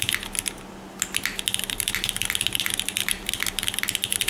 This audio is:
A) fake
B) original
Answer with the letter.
B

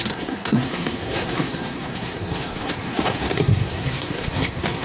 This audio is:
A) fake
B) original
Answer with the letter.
A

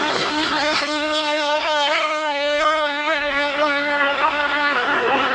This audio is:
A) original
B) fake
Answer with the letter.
B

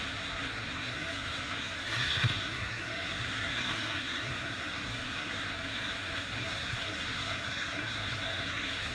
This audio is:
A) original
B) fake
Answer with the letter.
B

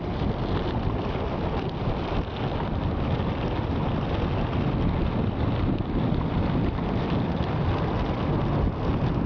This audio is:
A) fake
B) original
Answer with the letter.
B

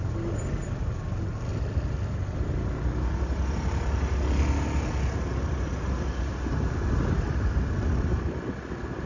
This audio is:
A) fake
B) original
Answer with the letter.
B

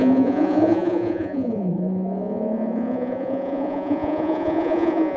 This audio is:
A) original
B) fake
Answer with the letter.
B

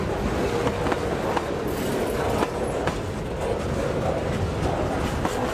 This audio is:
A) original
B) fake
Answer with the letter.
A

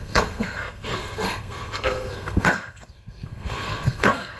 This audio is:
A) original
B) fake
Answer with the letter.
B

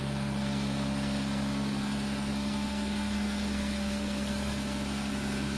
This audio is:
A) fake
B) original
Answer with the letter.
A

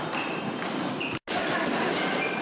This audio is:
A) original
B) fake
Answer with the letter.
A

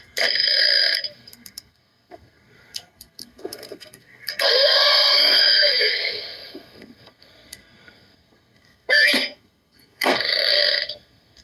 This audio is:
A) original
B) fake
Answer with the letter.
B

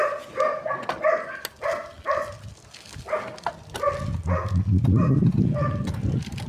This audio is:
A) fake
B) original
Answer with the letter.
B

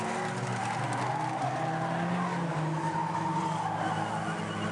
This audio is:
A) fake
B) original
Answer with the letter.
B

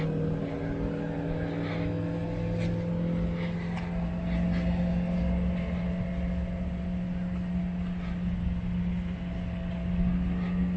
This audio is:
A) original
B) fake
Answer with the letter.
A